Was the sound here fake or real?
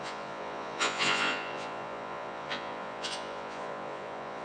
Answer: fake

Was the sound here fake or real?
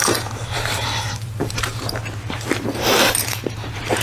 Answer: fake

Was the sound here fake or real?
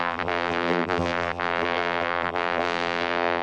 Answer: fake